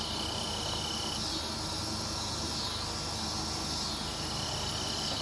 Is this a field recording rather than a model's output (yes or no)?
yes